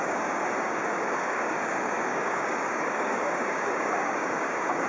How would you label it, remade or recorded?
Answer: remade